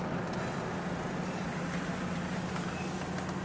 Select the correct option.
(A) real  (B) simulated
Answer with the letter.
A